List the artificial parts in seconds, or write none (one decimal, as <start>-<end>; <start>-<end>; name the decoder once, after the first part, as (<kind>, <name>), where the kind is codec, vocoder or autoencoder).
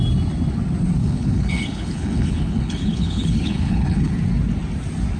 1.0-4.1 (codec, HILCodec)